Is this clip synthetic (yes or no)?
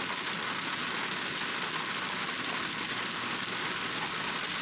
no